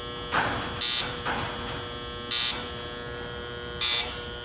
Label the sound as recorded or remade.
recorded